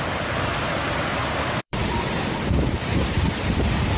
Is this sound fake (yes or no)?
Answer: yes